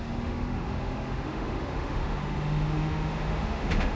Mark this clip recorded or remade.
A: remade